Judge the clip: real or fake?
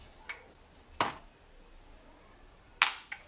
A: real